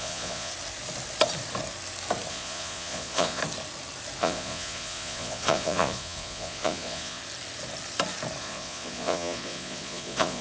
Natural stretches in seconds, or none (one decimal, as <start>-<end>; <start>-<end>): 0.5-2.3; 3.4-4.2; 7.2-8.4